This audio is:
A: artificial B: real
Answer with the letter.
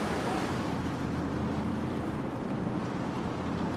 A